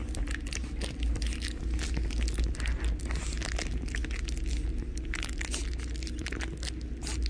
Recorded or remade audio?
recorded